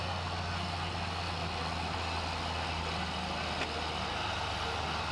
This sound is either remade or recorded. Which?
recorded